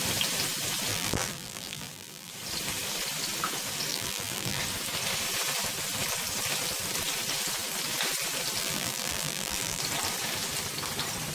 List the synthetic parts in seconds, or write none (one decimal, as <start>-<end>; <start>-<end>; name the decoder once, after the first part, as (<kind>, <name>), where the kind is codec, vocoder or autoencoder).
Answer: 0.9-2.3 (vocoder, BigVGAN v2); 3.9-4.6; 8.6-9.8